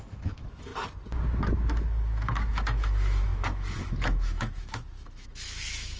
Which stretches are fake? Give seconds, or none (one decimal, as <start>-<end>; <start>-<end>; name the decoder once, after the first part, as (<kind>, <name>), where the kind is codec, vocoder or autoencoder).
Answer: 0.0-0.7 (autoencoder, DAC-VAE); 1.7-6.0